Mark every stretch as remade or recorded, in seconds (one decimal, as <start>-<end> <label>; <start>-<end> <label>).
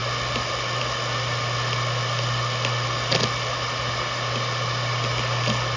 0.0-5.8 recorded